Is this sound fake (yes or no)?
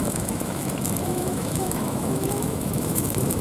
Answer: yes